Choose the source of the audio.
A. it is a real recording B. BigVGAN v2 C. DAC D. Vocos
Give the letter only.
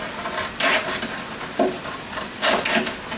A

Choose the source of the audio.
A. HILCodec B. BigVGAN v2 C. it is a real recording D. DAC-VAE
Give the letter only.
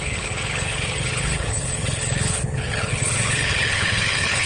A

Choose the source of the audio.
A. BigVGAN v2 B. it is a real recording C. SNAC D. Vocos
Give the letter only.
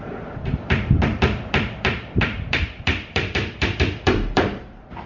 A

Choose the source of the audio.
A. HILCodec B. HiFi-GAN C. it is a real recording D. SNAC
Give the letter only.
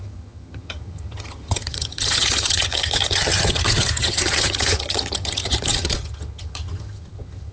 B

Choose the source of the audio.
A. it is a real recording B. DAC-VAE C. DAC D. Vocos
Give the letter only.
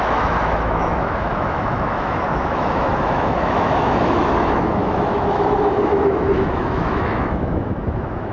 B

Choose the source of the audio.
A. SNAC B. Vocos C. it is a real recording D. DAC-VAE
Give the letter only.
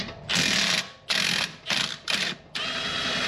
C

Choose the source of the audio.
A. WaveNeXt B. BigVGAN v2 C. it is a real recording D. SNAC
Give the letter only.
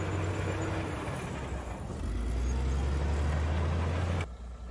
C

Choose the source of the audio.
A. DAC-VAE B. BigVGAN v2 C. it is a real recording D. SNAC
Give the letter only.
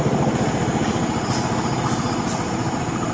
C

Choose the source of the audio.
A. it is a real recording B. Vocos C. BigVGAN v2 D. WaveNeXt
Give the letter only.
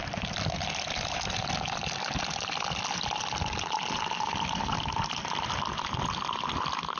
A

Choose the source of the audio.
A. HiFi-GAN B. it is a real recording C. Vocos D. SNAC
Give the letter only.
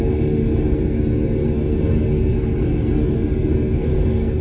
D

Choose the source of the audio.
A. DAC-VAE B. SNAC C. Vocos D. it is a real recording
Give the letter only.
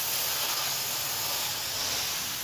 D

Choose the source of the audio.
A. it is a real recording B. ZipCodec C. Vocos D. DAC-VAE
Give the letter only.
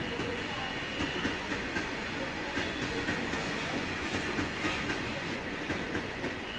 C